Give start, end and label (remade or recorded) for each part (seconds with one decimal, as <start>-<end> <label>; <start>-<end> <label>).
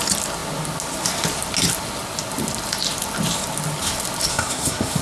0.0-4.3 recorded; 4.3-5.0 remade